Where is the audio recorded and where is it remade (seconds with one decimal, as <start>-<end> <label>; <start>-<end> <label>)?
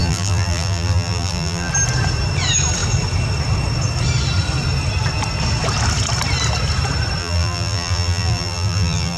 0.0-1.7 remade; 1.7-7.2 recorded; 7.2-9.2 remade